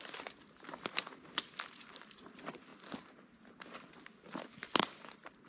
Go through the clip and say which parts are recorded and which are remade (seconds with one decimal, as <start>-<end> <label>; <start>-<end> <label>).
0.0-5.5 recorded